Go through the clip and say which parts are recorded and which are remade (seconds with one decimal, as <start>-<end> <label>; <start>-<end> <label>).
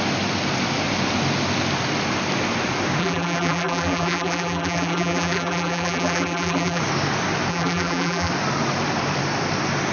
0.0-3.0 recorded; 3.0-6.8 remade; 6.8-7.5 recorded; 7.5-8.3 remade; 8.3-9.9 recorded